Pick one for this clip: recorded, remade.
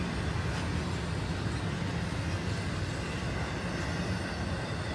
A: recorded